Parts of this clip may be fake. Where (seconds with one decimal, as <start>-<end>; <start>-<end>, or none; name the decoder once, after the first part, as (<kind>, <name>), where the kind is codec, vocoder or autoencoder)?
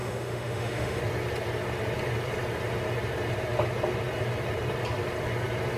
0.0-1.0 (autoencoder, DAC-VAE)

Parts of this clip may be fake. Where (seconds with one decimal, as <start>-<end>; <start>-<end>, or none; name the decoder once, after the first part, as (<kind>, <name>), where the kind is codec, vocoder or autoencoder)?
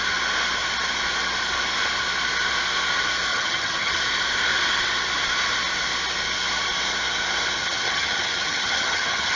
3.3-4.0 (vocoder, HiFi-GAN); 7.6-9.4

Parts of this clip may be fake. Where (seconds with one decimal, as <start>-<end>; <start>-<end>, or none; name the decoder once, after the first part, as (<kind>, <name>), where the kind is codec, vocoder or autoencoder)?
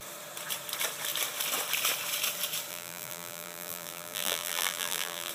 2.7-5.3 (vocoder, BigVGAN v2)